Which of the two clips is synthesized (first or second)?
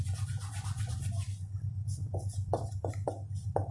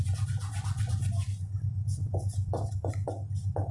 first